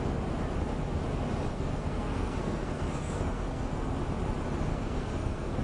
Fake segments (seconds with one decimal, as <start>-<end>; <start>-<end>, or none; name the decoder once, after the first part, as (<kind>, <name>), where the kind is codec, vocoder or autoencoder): 1.5-3.9 (codec, SNAC); 4.7-5.6